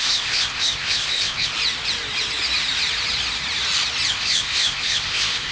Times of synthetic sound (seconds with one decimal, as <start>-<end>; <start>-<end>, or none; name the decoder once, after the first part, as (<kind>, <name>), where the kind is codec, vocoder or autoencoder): 0.0-1.5 (codec, ZipCodec); 4.1-5.5